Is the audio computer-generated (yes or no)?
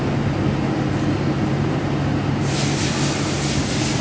no